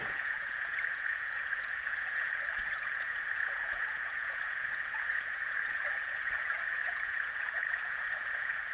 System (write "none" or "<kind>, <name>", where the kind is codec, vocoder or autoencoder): vocoder, Vocos